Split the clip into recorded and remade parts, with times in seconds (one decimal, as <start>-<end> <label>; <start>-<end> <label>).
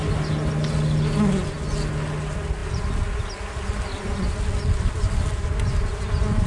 0.0-6.5 recorded